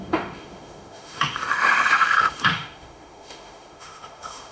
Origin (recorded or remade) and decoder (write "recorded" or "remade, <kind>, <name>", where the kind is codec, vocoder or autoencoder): remade, autoencoder, DAC-VAE